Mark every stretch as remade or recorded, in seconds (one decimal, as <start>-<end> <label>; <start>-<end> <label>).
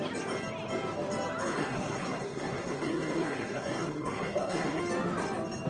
0.0-1.4 recorded; 1.4-4.8 remade; 4.8-5.7 recorded